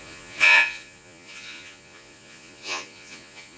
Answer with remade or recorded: remade